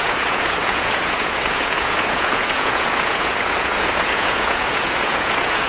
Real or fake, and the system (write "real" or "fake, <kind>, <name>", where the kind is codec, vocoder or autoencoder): fake, vocoder, Vocos